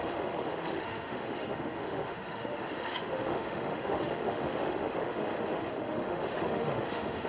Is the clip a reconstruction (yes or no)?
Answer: yes